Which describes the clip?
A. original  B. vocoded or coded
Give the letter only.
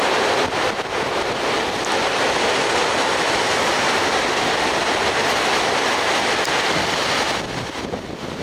A